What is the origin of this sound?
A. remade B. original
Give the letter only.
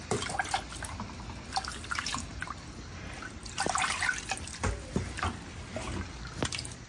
B